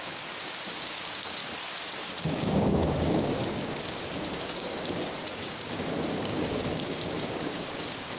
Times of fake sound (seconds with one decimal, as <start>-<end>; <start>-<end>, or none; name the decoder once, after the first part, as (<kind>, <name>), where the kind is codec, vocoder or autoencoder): 0.0-1.4 (codec, DAC); 2.2-8.2